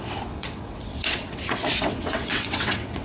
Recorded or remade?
remade